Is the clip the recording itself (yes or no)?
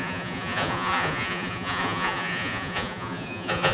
no